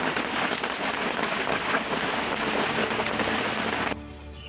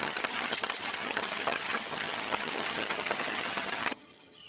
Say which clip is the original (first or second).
first